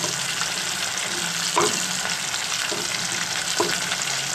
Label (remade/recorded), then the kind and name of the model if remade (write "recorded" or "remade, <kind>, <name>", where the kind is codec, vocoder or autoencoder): recorded